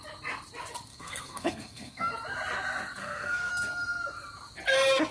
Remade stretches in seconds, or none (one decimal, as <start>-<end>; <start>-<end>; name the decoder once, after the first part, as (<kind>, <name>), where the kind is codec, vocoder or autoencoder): 0.9-2.1 (codec, SNAC); 3.0-3.5